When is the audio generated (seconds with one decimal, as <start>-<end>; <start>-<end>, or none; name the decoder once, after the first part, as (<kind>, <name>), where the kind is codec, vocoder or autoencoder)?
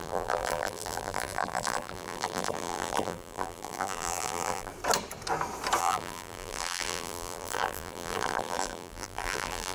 0.0-4.7 (vocoder, BigVGAN v2); 5.8-9.7